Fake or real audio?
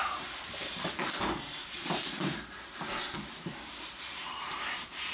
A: fake